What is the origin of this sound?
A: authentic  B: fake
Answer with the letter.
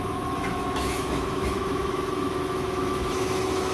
B